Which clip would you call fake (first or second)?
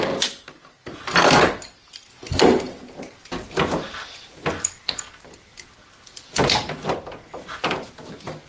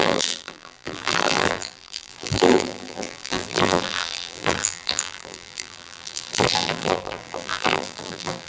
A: second